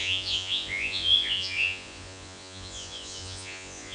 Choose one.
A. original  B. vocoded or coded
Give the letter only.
B